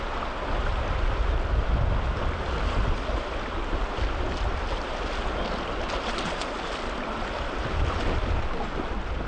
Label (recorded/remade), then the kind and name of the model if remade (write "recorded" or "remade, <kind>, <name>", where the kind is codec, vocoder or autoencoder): recorded